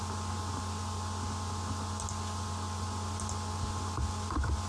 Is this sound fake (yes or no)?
no